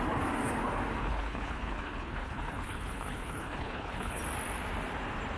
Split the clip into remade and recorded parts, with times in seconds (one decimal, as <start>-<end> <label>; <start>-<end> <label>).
0.0-1.0 recorded; 1.0-4.2 remade; 4.2-5.4 recorded